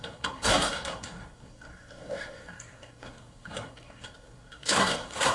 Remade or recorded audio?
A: remade